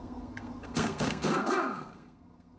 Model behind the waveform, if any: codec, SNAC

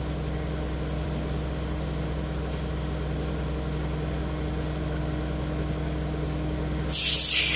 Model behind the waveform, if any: none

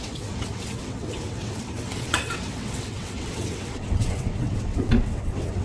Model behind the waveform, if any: vocoder, WaveNeXt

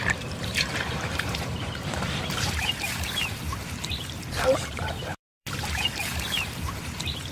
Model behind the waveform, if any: vocoder, BigVGAN v2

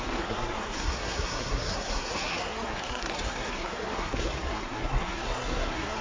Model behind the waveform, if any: codec, SNAC